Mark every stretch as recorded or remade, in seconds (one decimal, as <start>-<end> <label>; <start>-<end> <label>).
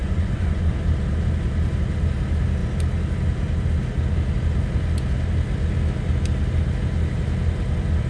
0.0-0.7 remade; 0.7-8.1 recorded